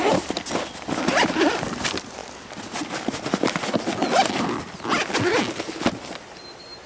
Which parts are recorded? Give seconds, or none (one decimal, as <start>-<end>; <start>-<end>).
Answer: 0.0-6.9